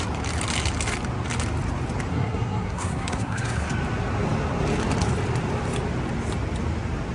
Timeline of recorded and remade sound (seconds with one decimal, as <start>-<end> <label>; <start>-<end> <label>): 0.0-2.1 recorded; 2.1-3.7 remade; 3.7-7.1 recorded